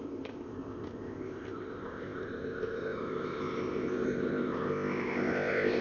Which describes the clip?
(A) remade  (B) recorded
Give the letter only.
A